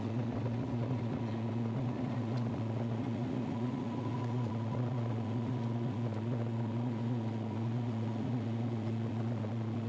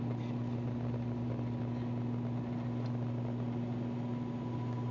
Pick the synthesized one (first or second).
first